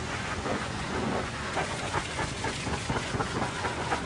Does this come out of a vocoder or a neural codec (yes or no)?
yes